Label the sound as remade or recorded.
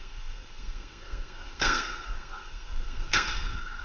remade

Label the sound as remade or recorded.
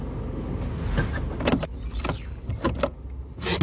recorded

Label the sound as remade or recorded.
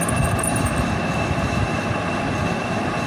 recorded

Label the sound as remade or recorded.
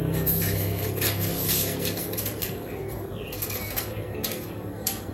remade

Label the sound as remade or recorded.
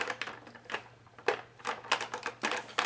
recorded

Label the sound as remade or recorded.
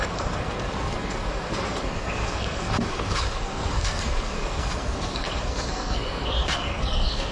remade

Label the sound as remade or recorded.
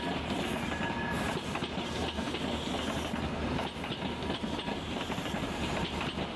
recorded